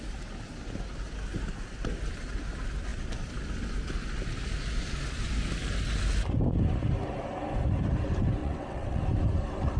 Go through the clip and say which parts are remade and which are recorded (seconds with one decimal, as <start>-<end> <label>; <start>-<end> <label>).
0.0-8.4 recorded; 8.4-9.0 remade; 9.0-9.8 recorded